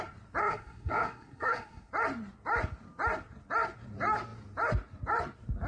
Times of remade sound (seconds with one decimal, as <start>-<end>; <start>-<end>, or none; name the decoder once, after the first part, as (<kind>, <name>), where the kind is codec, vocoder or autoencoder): 0.4-1.9 (codec, SNAC)